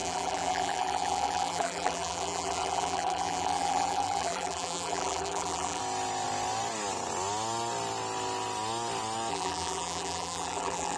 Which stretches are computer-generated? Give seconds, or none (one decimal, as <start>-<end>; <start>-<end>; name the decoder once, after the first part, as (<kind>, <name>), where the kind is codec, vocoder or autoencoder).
0.0-5.8 (vocoder, BigVGAN v2); 9.3-11.0